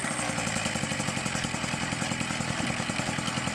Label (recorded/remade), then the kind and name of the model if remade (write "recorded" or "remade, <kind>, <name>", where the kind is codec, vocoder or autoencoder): recorded